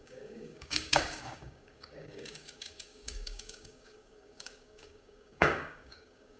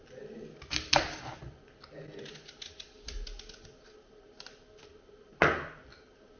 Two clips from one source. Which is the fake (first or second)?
first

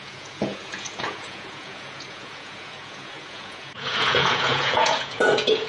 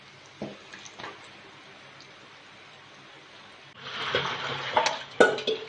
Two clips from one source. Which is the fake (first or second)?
first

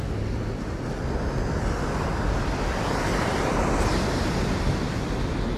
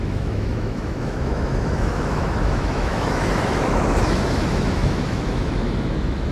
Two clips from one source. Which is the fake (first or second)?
second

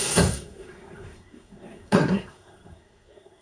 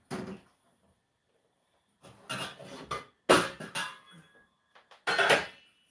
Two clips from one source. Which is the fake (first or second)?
first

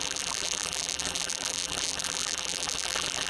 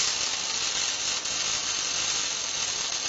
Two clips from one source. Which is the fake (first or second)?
first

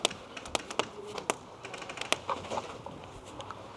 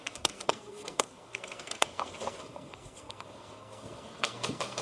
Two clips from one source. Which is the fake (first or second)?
second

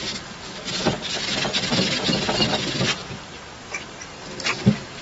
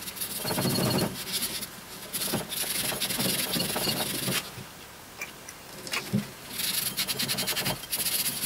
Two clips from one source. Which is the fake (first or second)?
first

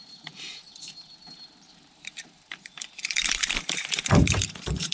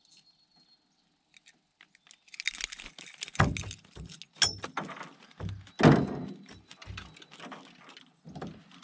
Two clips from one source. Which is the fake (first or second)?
first